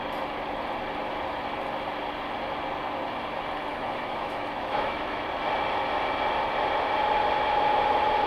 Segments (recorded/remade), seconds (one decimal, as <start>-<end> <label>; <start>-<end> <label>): 0.0-3.7 recorded; 3.7-5.2 remade; 5.2-8.3 recorded